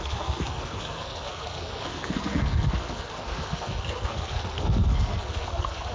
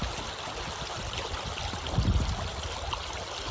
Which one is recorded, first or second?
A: second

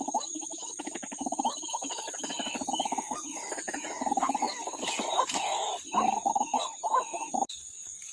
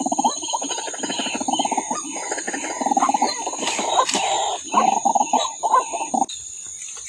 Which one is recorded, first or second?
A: second